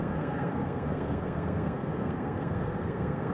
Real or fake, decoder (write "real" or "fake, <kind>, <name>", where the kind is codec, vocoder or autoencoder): fake, codec, SNAC